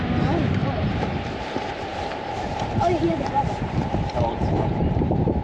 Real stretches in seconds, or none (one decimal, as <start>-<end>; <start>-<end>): none